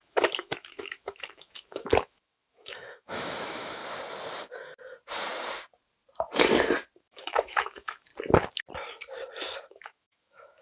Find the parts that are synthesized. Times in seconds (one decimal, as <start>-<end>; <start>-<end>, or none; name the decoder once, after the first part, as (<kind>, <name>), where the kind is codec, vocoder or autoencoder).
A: 0.0-3.8 (autoencoder, DAC-VAE); 7.0-8.1; 9.7-10.6